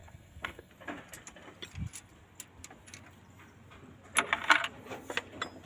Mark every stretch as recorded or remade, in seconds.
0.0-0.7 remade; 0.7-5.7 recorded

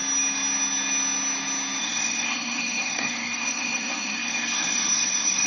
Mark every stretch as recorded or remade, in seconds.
0.0-1.8 recorded; 1.8-5.5 remade

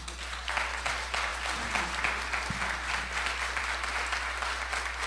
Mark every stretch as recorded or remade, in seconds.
0.0-5.1 recorded

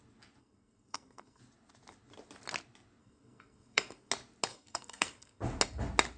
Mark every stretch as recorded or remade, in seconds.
0.0-0.4 recorded; 0.4-1.4 remade; 1.4-3.0 recorded; 3.0-4.1 remade; 4.1-4.5 recorded; 4.5-5.4 remade; 5.4-6.2 recorded

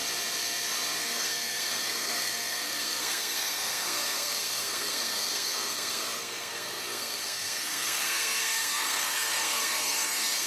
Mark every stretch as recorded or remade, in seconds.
0.0-1.0 recorded; 1.0-10.5 remade